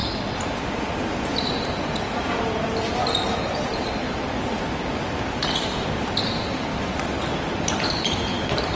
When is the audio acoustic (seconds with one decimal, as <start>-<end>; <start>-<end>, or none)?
0.0-6.7

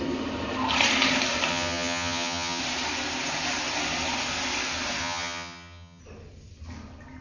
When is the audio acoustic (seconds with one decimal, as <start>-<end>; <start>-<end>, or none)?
0.0-1.5; 2.6-5.0; 6.0-7.2

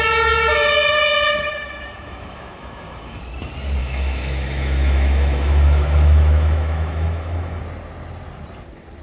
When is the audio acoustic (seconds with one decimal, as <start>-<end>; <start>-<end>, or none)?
0.0-1.5; 3.2-3.8; 7.6-9.0